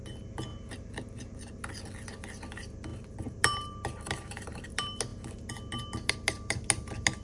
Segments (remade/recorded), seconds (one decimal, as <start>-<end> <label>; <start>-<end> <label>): 0.0-0.5 recorded; 0.5-1.5 remade; 1.5-2.9 recorded; 2.9-4.6 remade; 4.6-7.2 recorded